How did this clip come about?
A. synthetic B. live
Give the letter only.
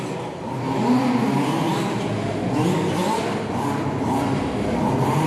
B